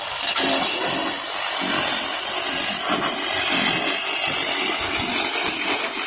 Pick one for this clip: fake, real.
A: fake